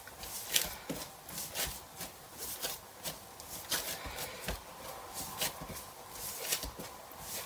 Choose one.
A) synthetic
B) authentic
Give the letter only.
B